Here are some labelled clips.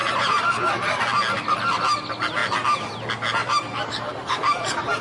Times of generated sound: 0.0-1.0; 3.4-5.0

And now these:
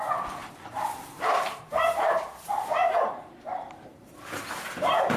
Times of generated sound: 0.0-5.2

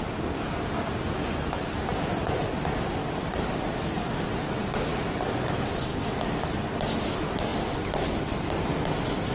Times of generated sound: 3.0-3.6; 4.9-5.8